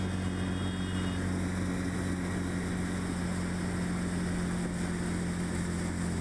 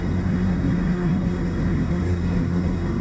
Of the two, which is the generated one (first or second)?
second